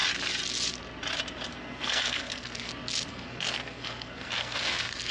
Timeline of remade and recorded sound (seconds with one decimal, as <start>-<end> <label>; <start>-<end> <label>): 0.0-1.5 recorded; 1.5-2.7 remade; 2.7-3.1 recorded; 3.1-5.1 remade